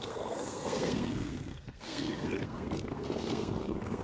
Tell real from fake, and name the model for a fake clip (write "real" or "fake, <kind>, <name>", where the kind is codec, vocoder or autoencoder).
fake, codec, SNAC